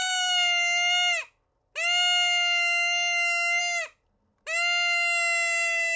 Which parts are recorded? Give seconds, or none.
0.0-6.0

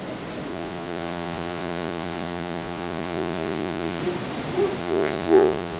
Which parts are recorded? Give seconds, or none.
0.0-0.5; 4.0-4.8

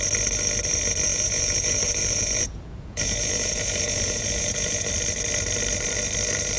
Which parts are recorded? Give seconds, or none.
0.0-1.1; 4.9-6.6

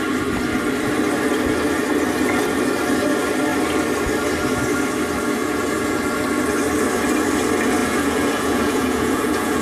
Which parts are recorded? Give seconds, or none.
0.0-5.4; 6.0-7.8